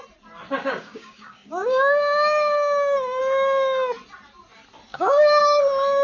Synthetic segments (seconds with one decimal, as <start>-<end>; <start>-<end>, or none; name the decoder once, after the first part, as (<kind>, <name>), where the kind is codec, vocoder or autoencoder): 0.6-3.2 (codec, DAC); 4.9-5.6